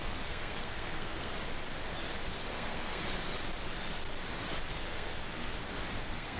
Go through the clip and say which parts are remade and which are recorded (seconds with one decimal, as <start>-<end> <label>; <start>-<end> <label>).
0.0-1.3 remade; 1.3-2.5 recorded; 2.5-3.0 remade; 3.0-4.7 recorded; 4.7-5.5 remade; 5.5-6.0 recorded; 6.0-6.4 remade